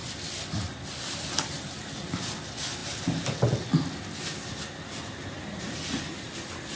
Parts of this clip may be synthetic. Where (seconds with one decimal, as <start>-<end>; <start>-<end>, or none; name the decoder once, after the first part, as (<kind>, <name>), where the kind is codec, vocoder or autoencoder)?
0.0-2.3 (vocoder, BigVGAN v2)